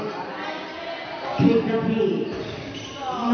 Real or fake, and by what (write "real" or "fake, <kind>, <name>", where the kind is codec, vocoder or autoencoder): real